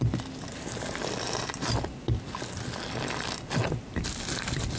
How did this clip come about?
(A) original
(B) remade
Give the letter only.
A